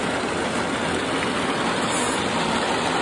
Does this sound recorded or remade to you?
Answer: recorded